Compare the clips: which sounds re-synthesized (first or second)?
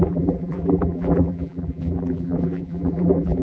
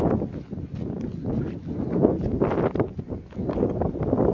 first